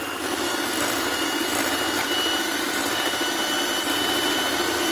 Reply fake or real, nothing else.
real